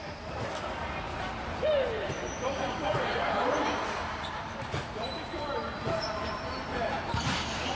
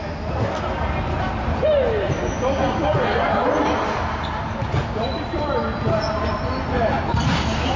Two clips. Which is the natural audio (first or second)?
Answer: second